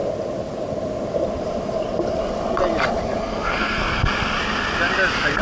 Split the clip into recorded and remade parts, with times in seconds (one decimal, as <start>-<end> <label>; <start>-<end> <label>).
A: 0.0-3.2 recorded; 3.2-3.8 remade; 3.8-5.4 recorded